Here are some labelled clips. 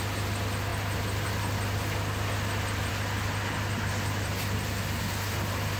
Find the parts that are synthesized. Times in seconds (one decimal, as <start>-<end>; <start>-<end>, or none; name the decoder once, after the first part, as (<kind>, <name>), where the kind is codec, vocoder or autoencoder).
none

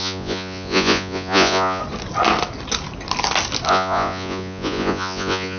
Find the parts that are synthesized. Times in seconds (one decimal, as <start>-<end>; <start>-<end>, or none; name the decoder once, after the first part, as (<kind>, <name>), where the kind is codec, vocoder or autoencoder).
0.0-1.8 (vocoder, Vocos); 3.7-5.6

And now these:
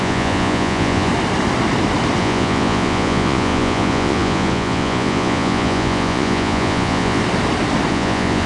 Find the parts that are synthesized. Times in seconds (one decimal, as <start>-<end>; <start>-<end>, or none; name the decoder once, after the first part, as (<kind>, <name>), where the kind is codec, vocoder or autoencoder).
0.0-1.1 (vocoder, Vocos); 2.2-7.2; 7.9-8.5

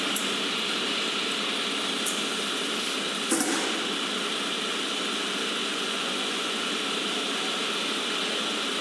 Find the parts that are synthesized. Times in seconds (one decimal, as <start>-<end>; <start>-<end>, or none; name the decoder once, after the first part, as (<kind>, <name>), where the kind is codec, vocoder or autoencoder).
5.6-6.7 (vocoder, Vocos)

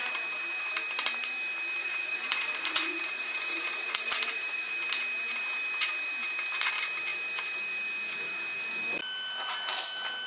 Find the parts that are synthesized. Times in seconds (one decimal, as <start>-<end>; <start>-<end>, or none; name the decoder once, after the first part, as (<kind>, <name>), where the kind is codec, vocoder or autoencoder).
1.8-4.7 (vocoder, Vocos)